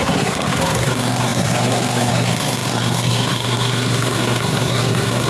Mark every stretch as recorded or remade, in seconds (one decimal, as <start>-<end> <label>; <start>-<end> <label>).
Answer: 0.0-5.3 remade